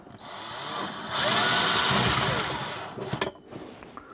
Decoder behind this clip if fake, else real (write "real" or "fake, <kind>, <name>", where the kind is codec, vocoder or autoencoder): real